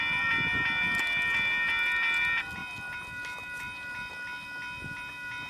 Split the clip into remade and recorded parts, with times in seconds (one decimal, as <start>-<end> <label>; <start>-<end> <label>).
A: 0.0-5.5 recorded